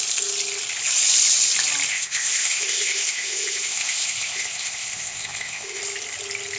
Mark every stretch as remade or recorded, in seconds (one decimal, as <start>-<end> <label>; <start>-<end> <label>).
0.0-1.9 recorded; 1.9-5.8 remade; 5.8-6.6 recorded